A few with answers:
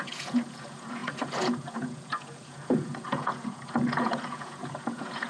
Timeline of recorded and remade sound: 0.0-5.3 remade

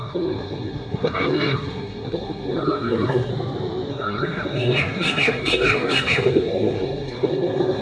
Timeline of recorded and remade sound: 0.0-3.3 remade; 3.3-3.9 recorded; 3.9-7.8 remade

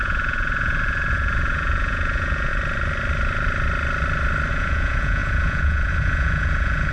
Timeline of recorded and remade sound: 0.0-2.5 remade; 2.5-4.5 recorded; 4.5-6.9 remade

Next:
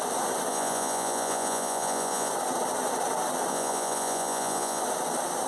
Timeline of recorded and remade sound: 0.0-0.5 recorded; 0.5-2.3 remade; 2.3-3.5 recorded; 3.5-4.8 remade; 4.8-5.5 recorded

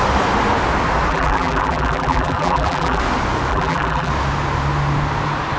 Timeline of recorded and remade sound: 0.0-1.1 recorded; 1.1-3.0 remade; 3.0-3.5 recorded; 3.5-4.1 remade; 4.1-5.6 recorded

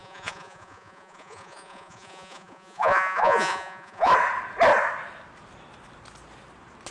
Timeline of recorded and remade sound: 0.0-4.1 remade; 4.1-6.9 recorded

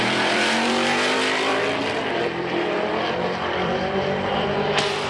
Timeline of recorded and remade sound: 0.0-1.5 remade; 1.5-2.0 recorded; 2.0-5.1 remade

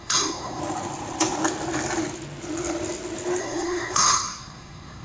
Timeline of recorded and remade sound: 0.0-0.6 remade; 0.6-3.4 recorded; 3.4-5.0 remade